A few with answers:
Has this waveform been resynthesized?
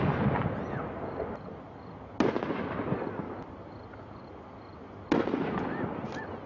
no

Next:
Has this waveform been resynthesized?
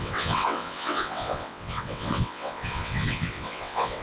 yes